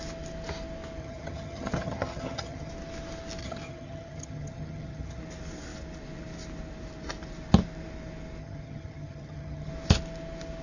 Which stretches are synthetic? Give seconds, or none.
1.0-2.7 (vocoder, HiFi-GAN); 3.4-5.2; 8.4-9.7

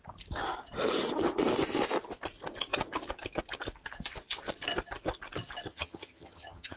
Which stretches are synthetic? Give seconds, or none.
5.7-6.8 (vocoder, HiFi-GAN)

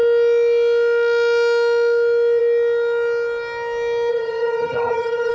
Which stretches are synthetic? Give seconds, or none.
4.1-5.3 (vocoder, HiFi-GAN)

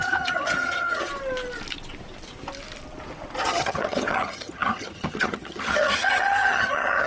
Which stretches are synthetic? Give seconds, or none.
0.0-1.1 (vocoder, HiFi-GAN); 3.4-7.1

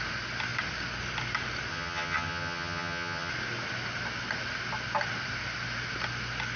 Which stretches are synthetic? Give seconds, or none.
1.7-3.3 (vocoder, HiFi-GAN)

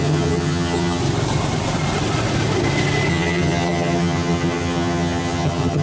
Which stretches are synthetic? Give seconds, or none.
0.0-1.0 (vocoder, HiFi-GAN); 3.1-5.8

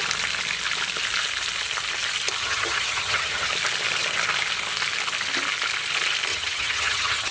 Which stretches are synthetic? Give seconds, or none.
2.4-3.5 (vocoder, HiFi-GAN); 6.3-7.3

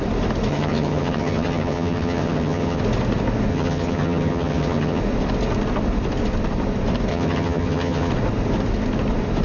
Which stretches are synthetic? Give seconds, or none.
0.5-2.8 (vocoder, HiFi-GAN); 3.5-5.0; 7.1-8.1